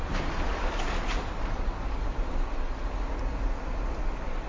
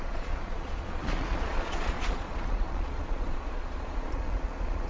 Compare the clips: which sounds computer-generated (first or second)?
second